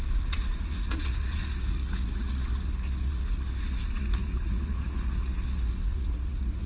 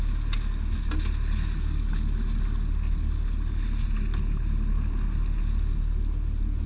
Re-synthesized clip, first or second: first